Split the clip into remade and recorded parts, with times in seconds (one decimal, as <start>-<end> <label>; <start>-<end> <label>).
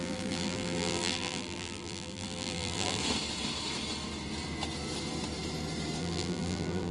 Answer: 0.0-3.0 remade; 3.0-6.0 recorded; 6.0-6.9 remade